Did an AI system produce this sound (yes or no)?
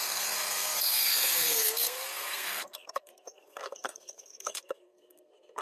yes